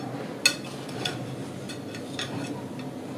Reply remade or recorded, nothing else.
recorded